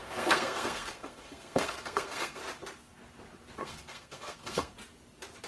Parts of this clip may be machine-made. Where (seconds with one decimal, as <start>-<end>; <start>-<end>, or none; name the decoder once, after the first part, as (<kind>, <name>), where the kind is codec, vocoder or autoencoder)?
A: 0.0-2.4 (codec, SNAC); 3.6-4.7